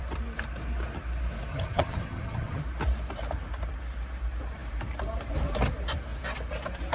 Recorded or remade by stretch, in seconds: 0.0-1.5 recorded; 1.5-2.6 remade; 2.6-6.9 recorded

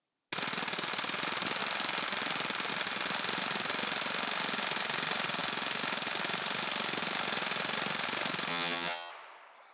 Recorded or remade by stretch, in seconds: 0.0-8.5 recorded; 8.5-9.1 remade; 9.1-9.7 recorded